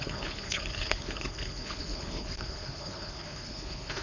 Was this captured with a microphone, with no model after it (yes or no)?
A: no